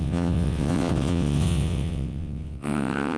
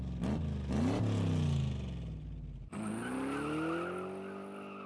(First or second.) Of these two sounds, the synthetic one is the first